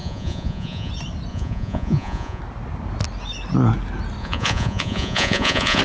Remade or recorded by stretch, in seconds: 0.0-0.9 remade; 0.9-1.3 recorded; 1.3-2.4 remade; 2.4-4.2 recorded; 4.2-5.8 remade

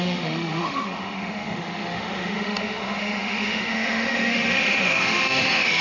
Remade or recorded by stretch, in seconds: 0.0-5.8 remade

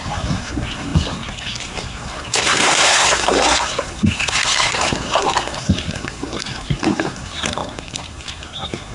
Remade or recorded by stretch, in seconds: 0.0-8.9 remade